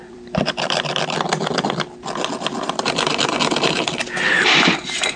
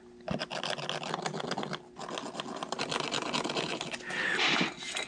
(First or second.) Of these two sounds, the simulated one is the first